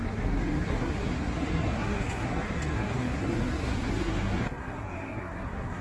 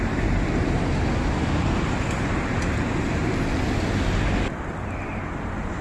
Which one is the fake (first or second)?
first